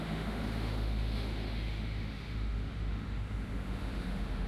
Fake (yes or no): yes